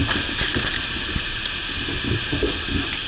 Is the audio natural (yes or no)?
yes